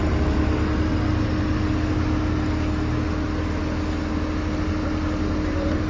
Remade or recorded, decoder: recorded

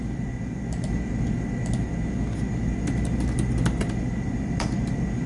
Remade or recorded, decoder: recorded